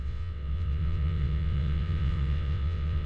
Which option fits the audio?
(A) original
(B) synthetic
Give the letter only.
B